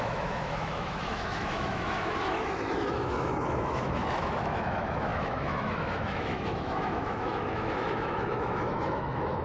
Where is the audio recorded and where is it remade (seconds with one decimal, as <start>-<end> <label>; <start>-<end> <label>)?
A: 0.0-9.4 remade